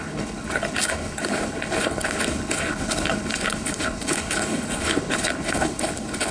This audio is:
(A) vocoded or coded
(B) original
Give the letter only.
A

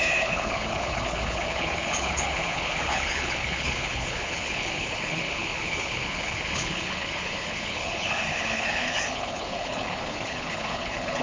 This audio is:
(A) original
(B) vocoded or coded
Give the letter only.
B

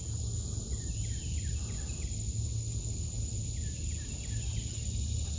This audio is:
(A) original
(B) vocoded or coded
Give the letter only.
A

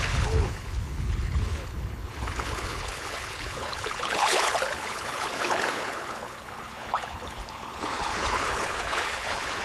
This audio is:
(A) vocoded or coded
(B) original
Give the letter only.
A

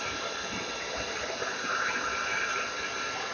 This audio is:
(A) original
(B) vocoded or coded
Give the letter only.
A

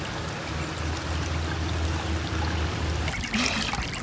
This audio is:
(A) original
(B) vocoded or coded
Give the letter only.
A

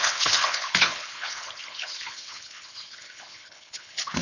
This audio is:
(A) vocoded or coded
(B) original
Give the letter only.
A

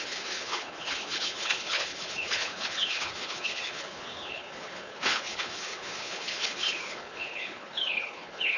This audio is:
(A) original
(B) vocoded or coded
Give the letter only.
B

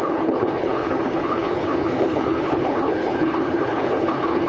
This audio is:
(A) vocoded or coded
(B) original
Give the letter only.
A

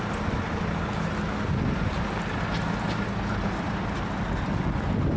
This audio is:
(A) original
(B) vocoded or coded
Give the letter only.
A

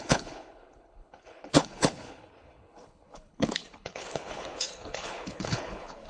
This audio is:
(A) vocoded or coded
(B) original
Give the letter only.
A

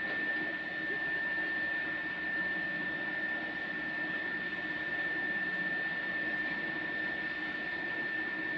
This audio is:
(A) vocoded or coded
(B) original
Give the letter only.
B